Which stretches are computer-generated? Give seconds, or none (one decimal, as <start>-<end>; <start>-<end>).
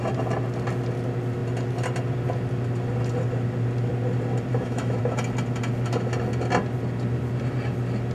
4.5-5.0